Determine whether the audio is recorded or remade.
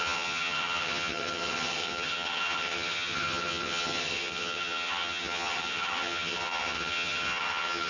remade